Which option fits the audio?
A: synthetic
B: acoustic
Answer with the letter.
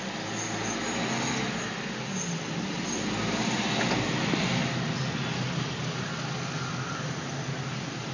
B